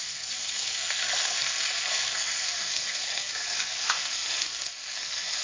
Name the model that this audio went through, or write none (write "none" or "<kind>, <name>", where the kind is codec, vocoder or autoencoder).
codec, SNAC